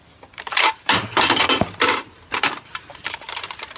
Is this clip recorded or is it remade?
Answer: remade